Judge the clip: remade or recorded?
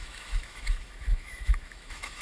remade